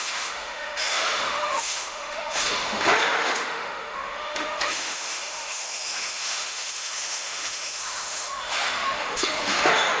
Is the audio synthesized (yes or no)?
yes